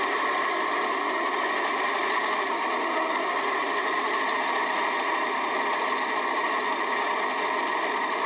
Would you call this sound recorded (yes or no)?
yes